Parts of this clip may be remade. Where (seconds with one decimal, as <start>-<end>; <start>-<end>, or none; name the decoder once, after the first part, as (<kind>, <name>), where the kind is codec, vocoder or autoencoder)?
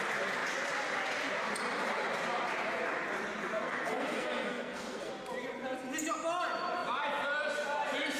3.4-5.1 (codec, SNAC)